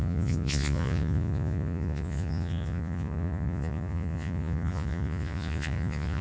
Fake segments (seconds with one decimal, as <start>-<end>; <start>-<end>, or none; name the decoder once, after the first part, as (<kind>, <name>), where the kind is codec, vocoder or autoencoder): 0.0-6.2 (vocoder, Vocos)